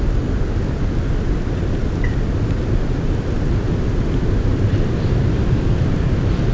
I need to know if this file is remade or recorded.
recorded